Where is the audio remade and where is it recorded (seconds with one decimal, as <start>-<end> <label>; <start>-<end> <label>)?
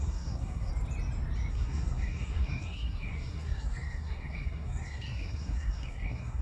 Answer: 0.0-0.7 remade; 0.7-1.5 recorded; 1.5-6.4 remade